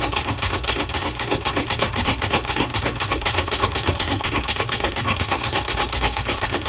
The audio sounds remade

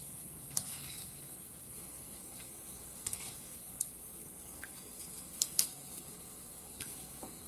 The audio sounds remade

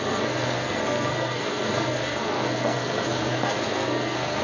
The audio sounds remade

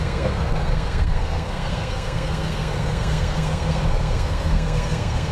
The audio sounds remade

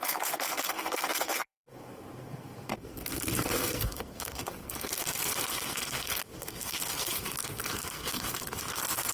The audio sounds remade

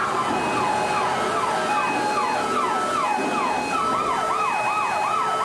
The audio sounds recorded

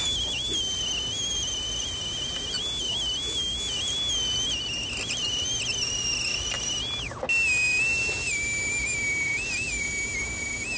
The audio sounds recorded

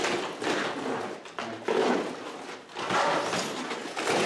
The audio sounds recorded